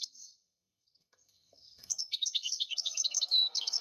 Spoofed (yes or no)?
yes